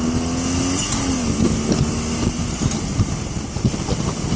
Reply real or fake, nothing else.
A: real